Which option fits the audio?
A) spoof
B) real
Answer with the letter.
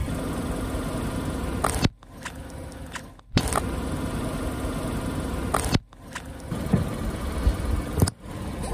B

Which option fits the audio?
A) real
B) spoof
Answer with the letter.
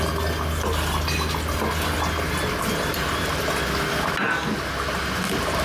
A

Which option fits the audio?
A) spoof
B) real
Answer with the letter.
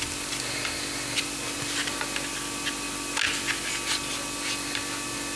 B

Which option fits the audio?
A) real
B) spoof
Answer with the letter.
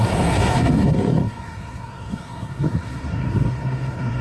B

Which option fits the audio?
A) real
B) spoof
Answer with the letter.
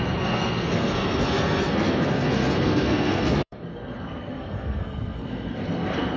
B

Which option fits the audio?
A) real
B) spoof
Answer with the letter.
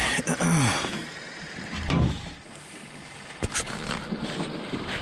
A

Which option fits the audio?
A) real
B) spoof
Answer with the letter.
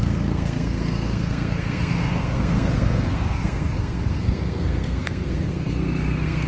B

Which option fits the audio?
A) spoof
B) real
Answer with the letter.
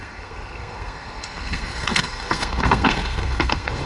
A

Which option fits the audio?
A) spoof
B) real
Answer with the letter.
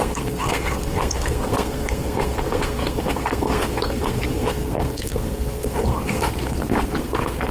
A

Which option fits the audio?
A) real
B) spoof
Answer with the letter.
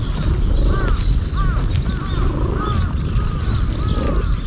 A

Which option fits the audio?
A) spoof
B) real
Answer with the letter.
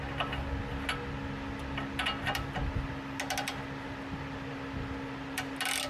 B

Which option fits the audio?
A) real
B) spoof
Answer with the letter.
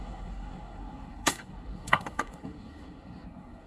B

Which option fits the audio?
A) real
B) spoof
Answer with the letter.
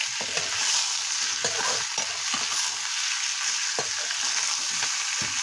A